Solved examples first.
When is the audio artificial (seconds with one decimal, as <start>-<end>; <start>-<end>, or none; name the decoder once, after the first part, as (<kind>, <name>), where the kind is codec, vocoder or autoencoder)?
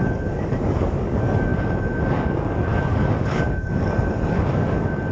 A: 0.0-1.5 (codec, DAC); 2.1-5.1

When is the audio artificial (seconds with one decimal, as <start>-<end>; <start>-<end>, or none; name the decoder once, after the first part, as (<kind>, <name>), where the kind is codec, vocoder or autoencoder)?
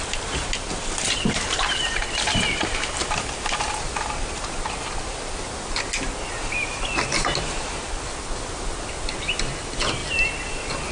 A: none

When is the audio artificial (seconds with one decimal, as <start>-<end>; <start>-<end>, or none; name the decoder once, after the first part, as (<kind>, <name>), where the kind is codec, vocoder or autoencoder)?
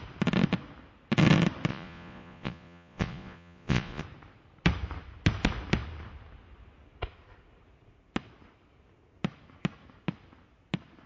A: 1.7-4.0 (vocoder, Vocos)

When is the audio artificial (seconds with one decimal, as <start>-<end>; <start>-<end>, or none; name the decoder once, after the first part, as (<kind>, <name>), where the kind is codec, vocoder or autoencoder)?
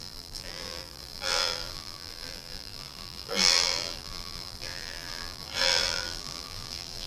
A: 0.0-7.1 (vocoder, BigVGAN v2)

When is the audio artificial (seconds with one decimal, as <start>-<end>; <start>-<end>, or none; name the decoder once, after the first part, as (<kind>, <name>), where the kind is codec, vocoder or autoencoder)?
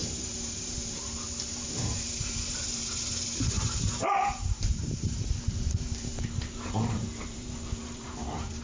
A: 0.0-8.6 (vocoder, BigVGAN v2)